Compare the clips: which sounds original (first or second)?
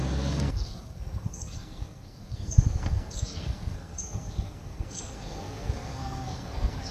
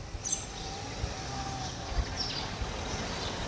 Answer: second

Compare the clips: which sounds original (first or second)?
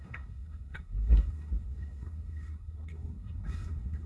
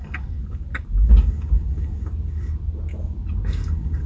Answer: second